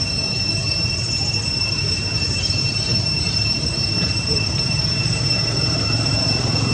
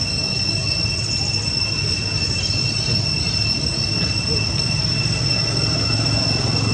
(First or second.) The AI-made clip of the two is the first